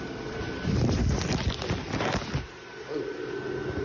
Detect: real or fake real